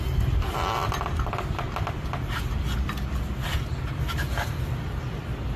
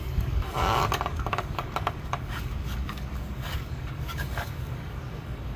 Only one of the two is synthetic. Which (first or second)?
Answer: second